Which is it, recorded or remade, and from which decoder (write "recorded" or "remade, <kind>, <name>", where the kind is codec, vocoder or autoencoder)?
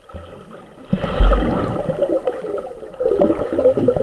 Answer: recorded